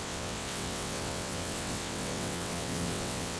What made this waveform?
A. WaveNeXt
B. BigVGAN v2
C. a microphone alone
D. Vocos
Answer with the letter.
A